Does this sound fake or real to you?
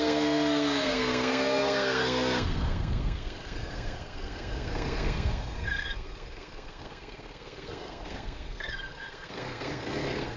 fake